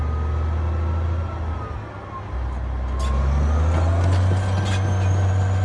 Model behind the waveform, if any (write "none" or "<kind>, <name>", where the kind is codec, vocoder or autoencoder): none